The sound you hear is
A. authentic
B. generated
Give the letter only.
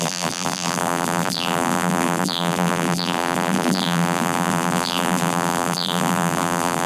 B